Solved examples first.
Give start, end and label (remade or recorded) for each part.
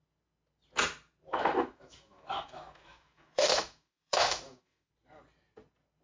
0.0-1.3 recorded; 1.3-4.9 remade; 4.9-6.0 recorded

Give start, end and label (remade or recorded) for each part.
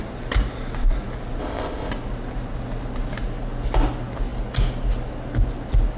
0.0-1.4 recorded; 1.4-1.9 remade; 1.9-6.0 recorded